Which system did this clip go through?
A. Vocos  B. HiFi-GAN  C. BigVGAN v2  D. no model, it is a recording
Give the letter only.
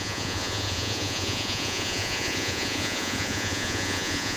A